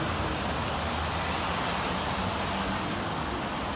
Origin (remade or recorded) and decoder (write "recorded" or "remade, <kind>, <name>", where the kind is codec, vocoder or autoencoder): recorded